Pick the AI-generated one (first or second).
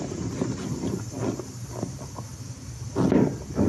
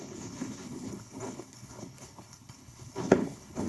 second